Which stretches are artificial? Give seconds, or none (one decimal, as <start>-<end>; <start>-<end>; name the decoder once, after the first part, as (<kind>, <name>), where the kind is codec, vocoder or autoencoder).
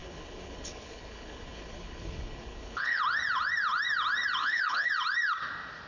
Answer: 0.0-3.0 (codec, HILCodec); 4.4-4.9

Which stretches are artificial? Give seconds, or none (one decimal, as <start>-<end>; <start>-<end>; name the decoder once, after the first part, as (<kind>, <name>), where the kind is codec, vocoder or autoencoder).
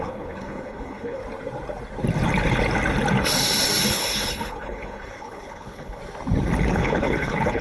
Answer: 0.0-1.2 (codec, HILCodec); 3.9-6.0; 6.7-7.6